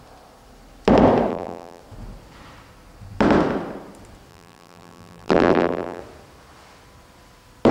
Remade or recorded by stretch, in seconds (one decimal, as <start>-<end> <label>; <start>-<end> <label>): 0.0-1.3 recorded; 1.3-1.8 remade; 1.8-4.3 recorded; 4.3-6.0 remade; 6.0-7.7 recorded